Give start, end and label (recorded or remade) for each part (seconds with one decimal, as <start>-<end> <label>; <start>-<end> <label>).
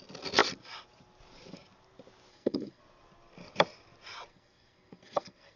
0.0-2.3 recorded; 2.3-2.8 remade; 2.8-4.3 recorded; 4.3-5.6 remade